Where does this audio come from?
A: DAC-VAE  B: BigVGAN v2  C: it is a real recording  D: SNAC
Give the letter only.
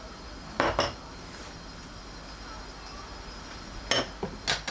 C